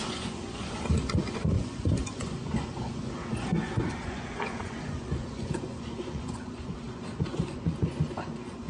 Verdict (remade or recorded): remade